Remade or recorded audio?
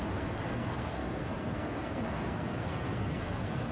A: remade